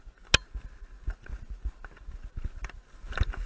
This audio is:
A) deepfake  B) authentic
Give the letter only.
B